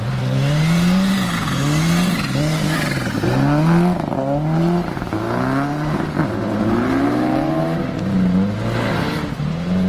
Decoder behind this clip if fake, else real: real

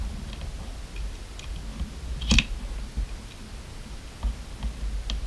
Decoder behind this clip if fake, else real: real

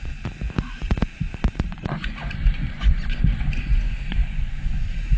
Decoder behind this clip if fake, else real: fake, vocoder, Vocos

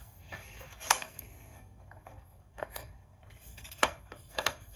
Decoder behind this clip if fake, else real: fake, codec, SNAC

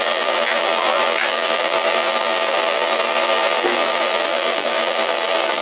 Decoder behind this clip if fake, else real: fake, vocoder, BigVGAN v2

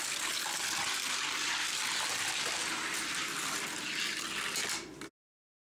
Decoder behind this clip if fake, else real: real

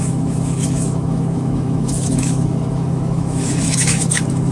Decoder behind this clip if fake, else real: fake, autoencoder, DAC-VAE